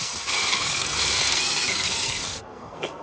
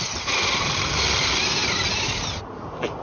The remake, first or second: first